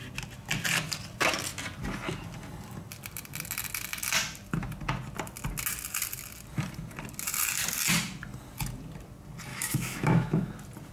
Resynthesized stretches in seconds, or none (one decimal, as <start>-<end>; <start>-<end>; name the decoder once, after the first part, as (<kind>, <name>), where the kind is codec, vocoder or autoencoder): 9.5-10.5 (autoencoder, DAC-VAE)